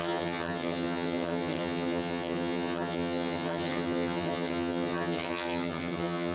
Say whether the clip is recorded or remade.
remade